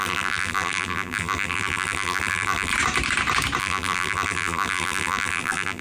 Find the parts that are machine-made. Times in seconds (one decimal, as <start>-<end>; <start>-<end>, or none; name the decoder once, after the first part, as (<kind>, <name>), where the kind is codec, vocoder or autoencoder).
0.0-2.7 (vocoder, BigVGAN v2); 3.6-5.8